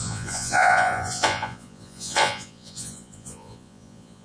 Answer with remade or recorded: remade